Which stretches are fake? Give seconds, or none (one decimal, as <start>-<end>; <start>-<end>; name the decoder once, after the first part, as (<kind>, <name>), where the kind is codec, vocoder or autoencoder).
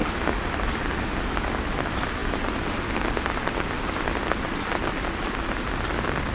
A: none